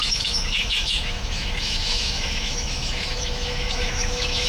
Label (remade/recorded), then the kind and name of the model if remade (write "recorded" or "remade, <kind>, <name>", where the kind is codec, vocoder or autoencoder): remade, autoencoder, DAC-VAE